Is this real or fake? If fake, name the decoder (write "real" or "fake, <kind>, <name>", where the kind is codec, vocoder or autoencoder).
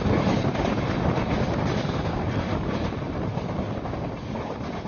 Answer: real